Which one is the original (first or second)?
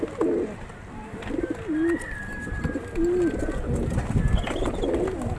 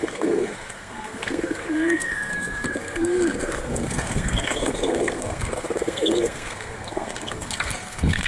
first